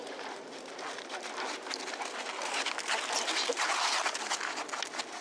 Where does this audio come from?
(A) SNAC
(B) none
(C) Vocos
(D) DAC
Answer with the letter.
B